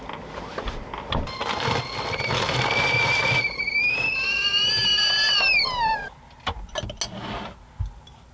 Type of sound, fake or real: real